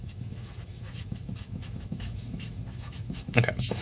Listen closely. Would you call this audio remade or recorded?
remade